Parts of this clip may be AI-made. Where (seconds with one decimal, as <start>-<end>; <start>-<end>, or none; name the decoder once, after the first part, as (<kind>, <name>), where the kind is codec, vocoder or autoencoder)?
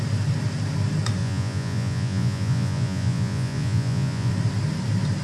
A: 1.2-4.3 (vocoder, Vocos)